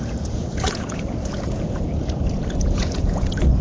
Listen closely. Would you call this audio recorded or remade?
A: remade